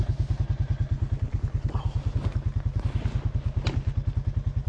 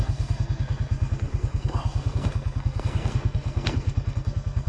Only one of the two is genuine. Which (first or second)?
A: first